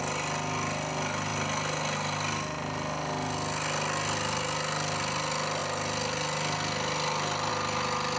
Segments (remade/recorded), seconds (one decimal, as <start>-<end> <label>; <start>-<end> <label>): 0.0-8.2 recorded